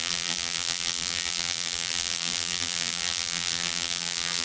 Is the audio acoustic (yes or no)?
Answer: no